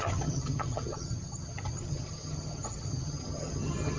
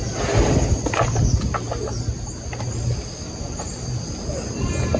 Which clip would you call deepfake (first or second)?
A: first